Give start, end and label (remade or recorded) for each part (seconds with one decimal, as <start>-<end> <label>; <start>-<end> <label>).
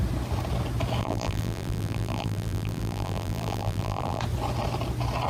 0.0-1.0 recorded; 1.0-4.2 remade; 4.2-5.3 recorded